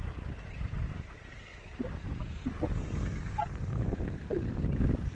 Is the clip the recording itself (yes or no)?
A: no